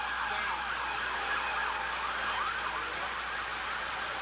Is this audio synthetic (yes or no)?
no